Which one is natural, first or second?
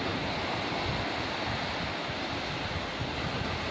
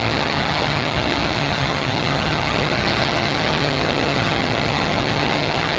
first